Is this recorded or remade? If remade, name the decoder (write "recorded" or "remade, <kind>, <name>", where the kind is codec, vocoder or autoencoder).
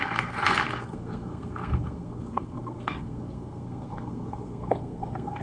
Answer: remade, codec, SNAC